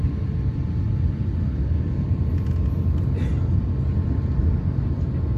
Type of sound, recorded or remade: recorded